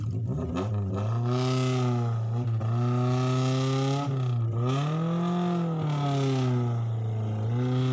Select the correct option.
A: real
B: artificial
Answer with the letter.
A